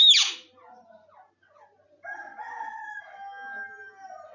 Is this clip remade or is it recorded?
recorded